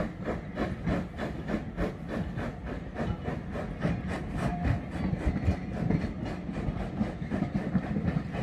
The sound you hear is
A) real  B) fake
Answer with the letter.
A